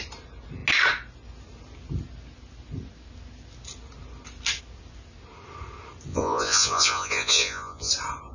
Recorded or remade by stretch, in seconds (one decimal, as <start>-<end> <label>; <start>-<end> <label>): 0.0-6.1 recorded; 6.1-7.9 remade; 7.9-8.3 recorded